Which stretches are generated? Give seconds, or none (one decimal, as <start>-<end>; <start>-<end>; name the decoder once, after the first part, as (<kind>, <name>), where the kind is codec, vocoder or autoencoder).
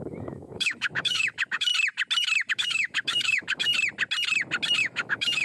0.0-1.7 (autoencoder, DAC-VAE); 2.5-3.7; 4.8-5.4